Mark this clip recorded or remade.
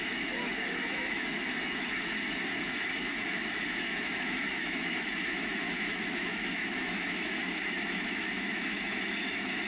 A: remade